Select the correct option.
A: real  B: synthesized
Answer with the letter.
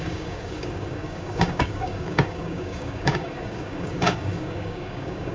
B